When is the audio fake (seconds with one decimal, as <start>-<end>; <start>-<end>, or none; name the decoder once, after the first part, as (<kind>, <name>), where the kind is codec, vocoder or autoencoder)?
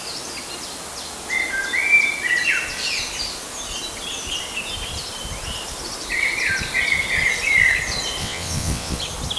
8.2-9.0 (vocoder, WaveNeXt)